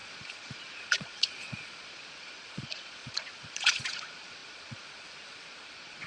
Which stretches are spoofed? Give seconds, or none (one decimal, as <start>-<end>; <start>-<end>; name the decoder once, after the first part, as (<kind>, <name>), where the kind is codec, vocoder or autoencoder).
0.0-6.1 (vocoder, Vocos)